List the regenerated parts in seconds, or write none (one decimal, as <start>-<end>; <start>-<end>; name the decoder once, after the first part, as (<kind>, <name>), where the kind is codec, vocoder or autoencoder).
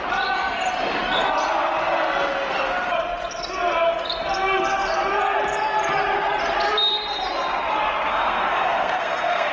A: 8.1-9.5 (codec, SNAC)